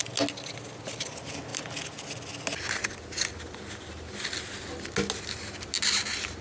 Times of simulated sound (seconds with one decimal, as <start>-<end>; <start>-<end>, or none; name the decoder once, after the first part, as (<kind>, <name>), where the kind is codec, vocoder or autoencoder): none